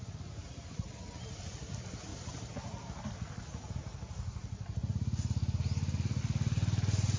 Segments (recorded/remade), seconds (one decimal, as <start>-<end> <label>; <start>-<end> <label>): 0.0-7.2 recorded